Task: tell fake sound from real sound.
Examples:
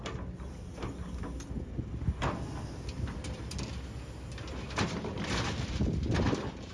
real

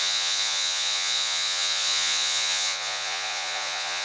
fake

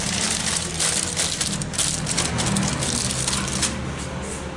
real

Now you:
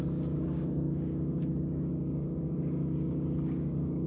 fake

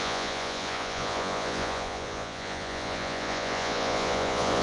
fake